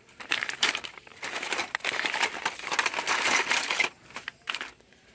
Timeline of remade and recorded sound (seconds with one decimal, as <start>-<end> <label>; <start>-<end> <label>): 0.0-1.1 remade; 1.1-3.6 recorded; 3.6-5.1 remade